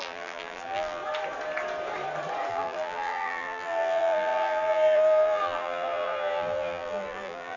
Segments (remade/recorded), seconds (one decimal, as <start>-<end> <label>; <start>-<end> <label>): 0.0-1.0 remade; 1.0-2.5 recorded; 2.5-7.6 remade